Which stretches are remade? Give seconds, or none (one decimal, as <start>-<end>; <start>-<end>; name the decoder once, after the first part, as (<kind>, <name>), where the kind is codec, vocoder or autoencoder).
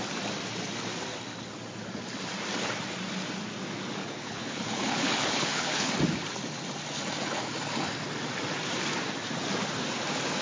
4.0-5.9 (codec, HILCodec)